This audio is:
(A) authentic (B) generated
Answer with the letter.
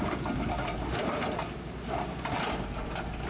A